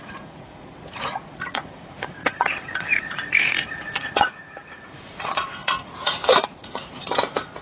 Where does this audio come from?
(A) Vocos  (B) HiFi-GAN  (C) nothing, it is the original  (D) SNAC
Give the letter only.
A